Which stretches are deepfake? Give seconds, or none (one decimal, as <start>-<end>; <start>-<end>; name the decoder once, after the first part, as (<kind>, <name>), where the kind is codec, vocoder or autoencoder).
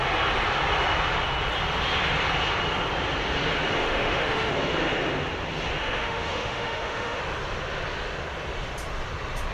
3.8-4.5 (autoencoder, DAC-VAE); 5.8-7.2